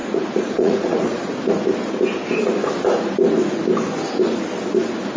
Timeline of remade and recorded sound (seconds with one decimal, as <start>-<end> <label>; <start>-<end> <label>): 0.0-1.5 remade; 1.5-5.2 recorded

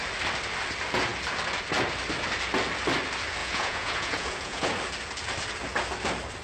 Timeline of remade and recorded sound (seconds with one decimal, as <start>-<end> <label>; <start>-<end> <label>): 0.0-3.4 recorded; 3.4-4.8 remade; 4.8-6.4 recorded

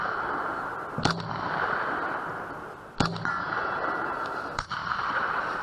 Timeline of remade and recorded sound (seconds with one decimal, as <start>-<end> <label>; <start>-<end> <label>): 0.0-0.7 remade; 0.7-4.1 recorded; 4.1-5.6 remade

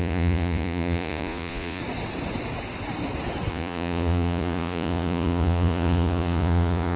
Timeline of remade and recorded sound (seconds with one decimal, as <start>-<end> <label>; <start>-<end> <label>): 0.0-1.8 remade; 1.8-3.5 recorded; 3.5-7.0 remade